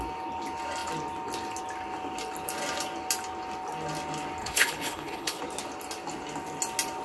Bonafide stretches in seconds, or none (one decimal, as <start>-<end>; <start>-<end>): 0.0-4.4; 5.4-7.0